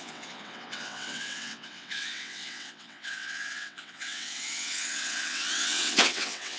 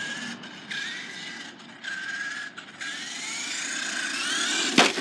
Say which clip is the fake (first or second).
first